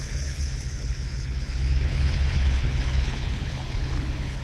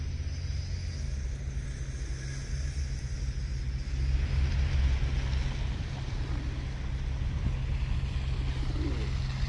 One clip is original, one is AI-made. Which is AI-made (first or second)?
first